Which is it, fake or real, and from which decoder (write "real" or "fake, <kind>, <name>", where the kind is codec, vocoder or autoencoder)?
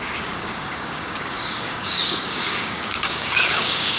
fake, codec, DAC